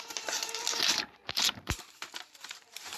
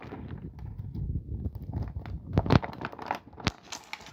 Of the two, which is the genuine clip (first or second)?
second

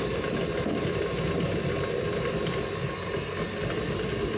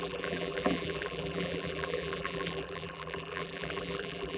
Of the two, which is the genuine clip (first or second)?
first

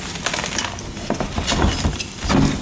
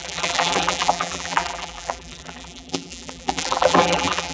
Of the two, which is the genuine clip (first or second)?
first